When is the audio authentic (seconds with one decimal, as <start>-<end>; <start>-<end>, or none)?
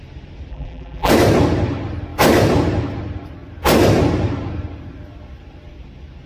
0.0-0.5; 1.1-6.3